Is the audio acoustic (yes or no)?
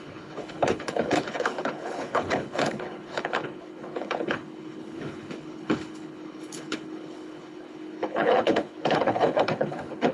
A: no